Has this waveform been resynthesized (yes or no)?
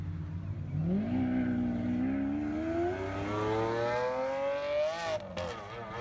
no